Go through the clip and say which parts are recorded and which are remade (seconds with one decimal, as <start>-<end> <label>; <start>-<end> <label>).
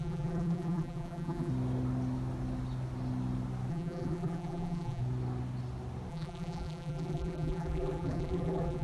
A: 0.0-1.5 remade; 1.5-3.7 recorded; 3.7-5.0 remade; 5.0-6.1 recorded; 6.1-8.8 remade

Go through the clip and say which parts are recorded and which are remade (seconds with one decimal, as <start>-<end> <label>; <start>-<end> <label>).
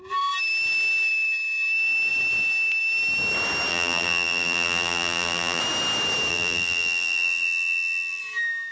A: 0.0-3.7 recorded; 3.7-5.6 remade; 5.6-6.3 recorded; 6.3-8.2 remade; 8.2-8.7 recorded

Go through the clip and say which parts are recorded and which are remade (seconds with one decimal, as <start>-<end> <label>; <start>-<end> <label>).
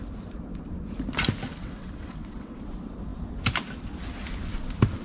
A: 0.0-1.6 recorded; 1.6-2.7 remade; 2.7-5.0 recorded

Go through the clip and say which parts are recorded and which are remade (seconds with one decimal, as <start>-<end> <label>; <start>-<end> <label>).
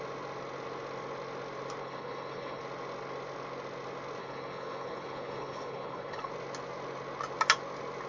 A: 0.0-1.8 recorded; 1.8-2.6 remade; 2.6-4.2 recorded; 4.2-6.3 remade; 6.3-8.1 recorded